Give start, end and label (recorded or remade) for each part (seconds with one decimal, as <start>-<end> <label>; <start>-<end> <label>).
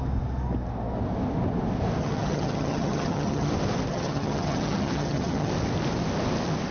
0.0-2.0 recorded; 2.0-3.5 remade; 3.5-3.9 recorded; 3.9-5.5 remade; 5.5-6.7 recorded